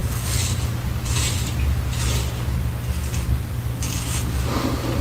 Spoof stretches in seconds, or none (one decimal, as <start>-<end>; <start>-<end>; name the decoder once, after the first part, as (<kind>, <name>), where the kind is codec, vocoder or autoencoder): none

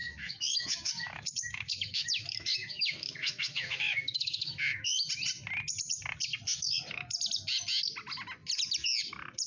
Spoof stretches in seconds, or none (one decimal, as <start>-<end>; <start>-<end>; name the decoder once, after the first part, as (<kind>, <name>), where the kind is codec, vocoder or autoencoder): 0.0-5.1 (autoencoder, DAC-VAE)

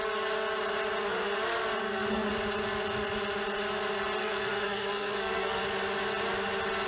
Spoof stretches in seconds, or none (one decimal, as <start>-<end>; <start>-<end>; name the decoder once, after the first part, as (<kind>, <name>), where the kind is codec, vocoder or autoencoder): 1.8-2.3 (codec, SNAC); 4.2-5.6

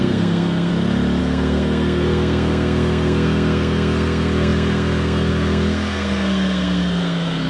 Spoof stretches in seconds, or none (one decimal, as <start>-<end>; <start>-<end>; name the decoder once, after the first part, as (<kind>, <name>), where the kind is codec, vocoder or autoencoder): 0.0-0.7 (codec, SNAC); 1.2-7.5

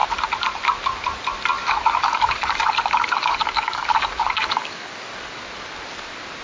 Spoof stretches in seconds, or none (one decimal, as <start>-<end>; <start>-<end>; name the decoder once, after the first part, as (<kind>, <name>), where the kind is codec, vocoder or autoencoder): 1.6-5.4 (codec, DAC)

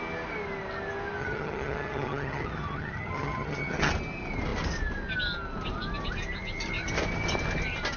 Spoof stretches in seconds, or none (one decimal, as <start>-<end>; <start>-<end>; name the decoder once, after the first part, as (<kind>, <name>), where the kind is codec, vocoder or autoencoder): 1.2-3.9 (vocoder, HiFi-GAN)

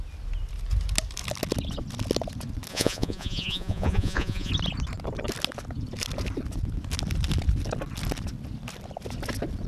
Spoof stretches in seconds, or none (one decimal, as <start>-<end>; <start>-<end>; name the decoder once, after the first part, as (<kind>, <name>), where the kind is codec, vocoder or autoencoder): 2.7-4.5 (vocoder, Vocos)